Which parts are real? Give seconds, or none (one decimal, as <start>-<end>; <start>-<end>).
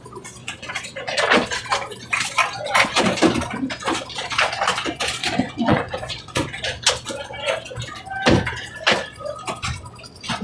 0.0-0.4; 1.2-5.2; 6.6-10.4